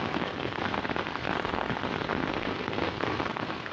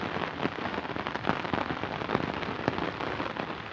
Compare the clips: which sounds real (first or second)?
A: second